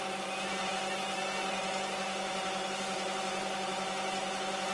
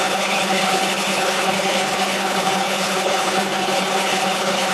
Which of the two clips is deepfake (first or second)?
second